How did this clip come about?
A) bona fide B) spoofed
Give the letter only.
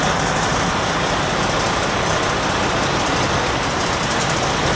A